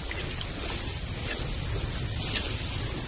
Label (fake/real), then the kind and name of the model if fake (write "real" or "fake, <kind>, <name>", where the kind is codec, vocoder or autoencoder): real